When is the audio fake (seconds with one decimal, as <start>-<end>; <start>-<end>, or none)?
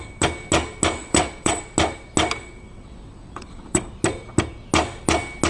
1.0-1.6; 2.4-3.9